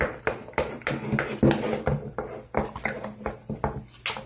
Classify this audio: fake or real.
real